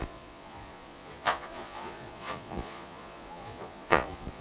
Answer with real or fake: fake